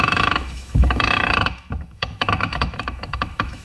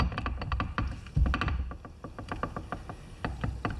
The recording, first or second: second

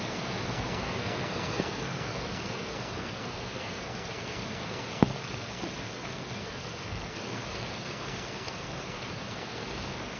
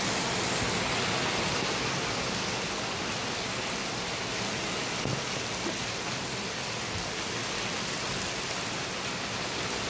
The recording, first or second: second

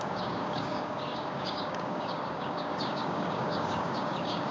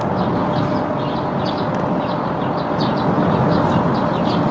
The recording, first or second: second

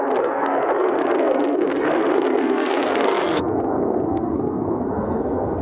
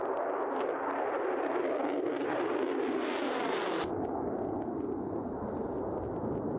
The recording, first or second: second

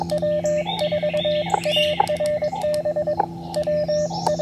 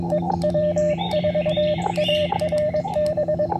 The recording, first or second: first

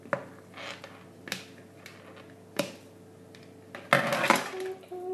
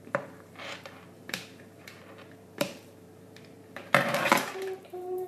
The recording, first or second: first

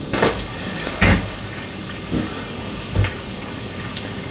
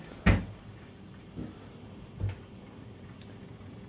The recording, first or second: second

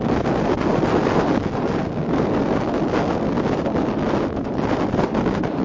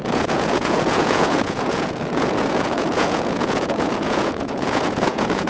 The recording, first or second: first